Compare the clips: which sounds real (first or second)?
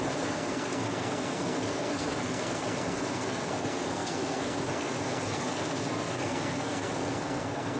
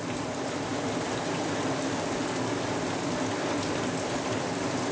second